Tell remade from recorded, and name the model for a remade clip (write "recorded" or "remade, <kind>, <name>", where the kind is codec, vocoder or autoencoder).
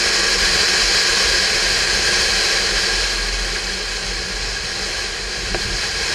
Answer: recorded